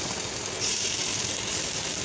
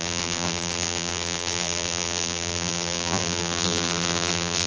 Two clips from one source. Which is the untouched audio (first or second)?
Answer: first